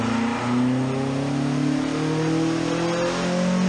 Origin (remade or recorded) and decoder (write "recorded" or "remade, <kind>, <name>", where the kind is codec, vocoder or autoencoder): recorded